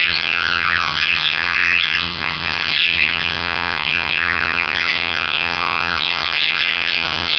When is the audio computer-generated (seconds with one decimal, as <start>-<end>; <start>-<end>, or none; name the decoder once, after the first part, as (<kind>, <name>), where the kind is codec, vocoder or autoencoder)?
0.0-7.4 (vocoder, HiFi-GAN)